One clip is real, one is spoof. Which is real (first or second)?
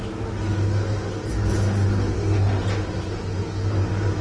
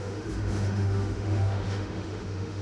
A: first